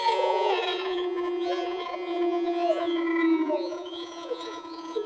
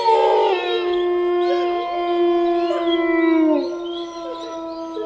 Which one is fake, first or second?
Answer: first